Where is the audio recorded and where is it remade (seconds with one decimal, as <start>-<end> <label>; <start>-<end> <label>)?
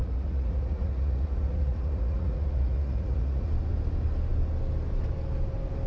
0.0-3.5 remade; 3.5-5.9 recorded